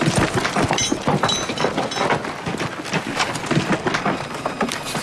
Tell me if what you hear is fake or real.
real